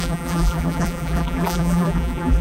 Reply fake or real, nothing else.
fake